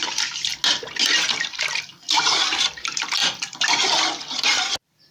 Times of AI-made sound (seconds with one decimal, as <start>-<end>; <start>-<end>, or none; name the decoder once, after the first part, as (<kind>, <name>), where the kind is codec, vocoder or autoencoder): 0.0-0.5 (vocoder, BigVGAN v2); 2.7-5.1